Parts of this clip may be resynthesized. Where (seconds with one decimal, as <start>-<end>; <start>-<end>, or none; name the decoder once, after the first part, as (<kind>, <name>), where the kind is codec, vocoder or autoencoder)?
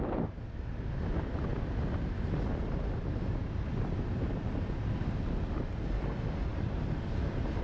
none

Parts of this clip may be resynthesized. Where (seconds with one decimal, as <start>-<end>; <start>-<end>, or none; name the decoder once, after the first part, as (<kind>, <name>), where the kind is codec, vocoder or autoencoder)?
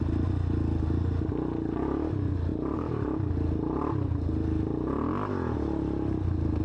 2.5-3.3 (vocoder, BigVGAN v2)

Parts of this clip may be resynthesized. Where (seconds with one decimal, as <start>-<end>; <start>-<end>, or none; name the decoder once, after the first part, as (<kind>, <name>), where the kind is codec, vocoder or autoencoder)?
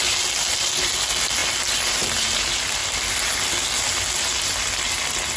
none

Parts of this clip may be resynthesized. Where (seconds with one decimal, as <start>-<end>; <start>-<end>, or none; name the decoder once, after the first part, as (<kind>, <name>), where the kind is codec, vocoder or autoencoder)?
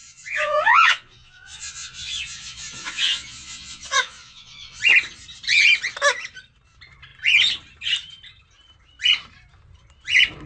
0.0-4.8 (vocoder, Vocos)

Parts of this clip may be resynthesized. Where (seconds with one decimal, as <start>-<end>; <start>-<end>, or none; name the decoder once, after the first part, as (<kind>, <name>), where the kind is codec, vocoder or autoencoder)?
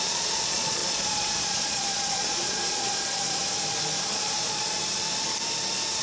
0.0-3.4 (vocoder, Vocos); 4.1-4.8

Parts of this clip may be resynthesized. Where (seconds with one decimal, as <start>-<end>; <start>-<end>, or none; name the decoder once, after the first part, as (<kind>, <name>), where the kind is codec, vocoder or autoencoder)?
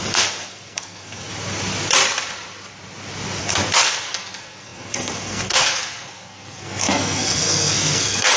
0.0-1.3 (codec, SNAC); 3.4-8.4